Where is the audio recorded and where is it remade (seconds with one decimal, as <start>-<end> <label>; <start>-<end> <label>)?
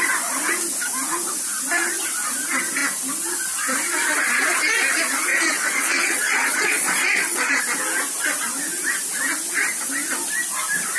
0.0-5.3 recorded; 5.3-7.6 remade; 7.6-11.0 recorded